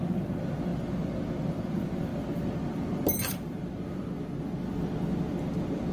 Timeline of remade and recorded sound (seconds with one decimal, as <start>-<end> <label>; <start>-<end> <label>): 0.0-5.9 recorded